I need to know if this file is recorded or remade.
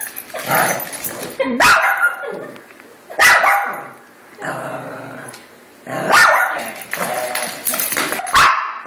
recorded